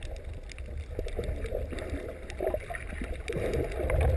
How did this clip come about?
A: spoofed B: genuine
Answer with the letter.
B